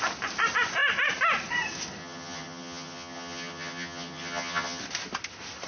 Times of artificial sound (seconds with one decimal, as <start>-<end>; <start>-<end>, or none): 2.0-4.8